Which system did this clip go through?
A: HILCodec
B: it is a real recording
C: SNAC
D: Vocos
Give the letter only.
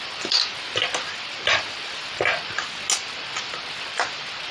B